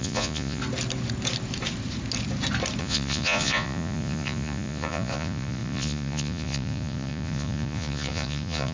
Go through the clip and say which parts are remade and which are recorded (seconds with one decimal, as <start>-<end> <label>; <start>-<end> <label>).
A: 0.0-0.6 remade; 0.6-2.8 recorded; 2.8-8.7 remade